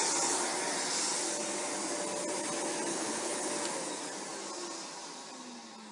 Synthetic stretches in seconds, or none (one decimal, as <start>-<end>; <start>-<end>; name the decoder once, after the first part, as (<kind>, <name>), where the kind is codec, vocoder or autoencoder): 2.9-3.5 (codec, HILCodec)